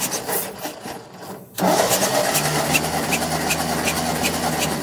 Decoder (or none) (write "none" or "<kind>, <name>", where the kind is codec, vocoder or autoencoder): none